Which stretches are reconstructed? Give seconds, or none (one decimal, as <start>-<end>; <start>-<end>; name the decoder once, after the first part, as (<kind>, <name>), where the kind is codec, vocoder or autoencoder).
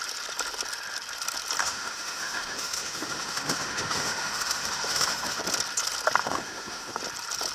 1.6-5.4 (autoencoder, DAC-VAE); 6.2-7.0